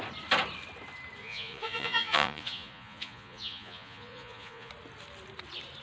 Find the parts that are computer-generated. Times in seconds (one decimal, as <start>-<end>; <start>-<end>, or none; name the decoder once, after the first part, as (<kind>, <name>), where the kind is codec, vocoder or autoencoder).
1.2-4.7 (vocoder, Vocos)